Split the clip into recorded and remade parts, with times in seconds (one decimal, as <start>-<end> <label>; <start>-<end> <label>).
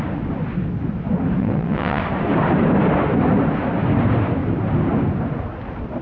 0.0-1.4 recorded; 1.4-2.0 remade; 2.0-6.0 recorded